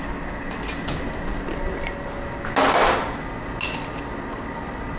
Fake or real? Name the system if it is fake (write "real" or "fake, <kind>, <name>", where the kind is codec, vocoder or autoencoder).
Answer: real